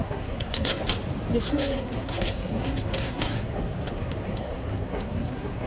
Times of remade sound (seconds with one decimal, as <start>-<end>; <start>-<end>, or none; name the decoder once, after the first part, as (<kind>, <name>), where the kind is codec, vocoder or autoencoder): 0.0-0.8 (codec, SNAC); 1.4-5.7